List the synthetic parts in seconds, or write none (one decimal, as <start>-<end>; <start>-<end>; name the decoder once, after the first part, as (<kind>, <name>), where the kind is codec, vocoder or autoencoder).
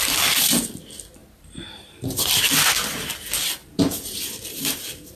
1.2-2.4 (vocoder, BigVGAN v2); 3.6-5.1